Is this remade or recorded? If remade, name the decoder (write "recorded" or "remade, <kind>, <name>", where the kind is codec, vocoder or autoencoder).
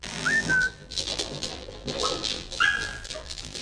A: remade, vocoder, BigVGAN v2